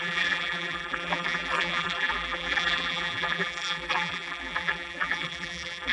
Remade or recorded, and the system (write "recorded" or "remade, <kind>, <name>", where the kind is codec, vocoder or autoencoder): remade, vocoder, BigVGAN v2